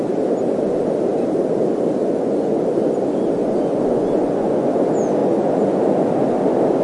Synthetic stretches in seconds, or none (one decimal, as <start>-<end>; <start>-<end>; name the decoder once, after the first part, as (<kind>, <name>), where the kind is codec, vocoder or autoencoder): 2.0-2.6 (vocoder, Vocos); 3.4-4.7; 5.2-5.8